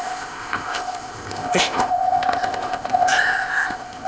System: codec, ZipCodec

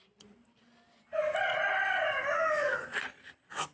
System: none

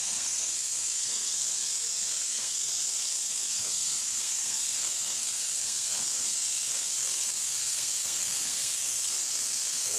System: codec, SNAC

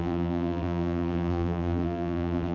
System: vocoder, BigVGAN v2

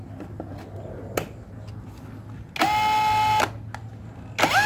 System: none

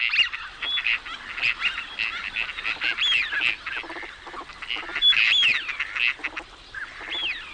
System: none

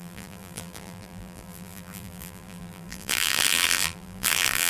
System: vocoder, BigVGAN v2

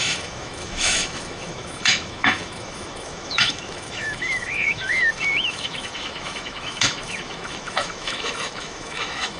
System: autoencoder, DAC-VAE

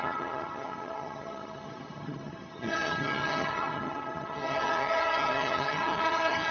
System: vocoder, HiFi-GAN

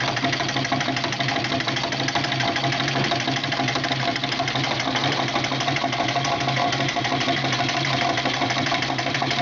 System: none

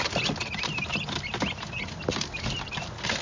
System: none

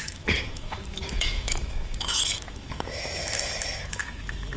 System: autoencoder, DAC-VAE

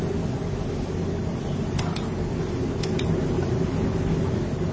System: none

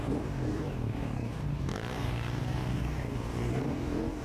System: codec, DAC